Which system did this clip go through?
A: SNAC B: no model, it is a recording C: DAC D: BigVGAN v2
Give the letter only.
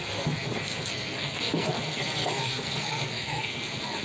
A